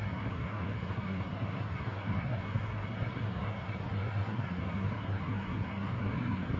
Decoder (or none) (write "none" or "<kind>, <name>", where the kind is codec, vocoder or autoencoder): codec, SNAC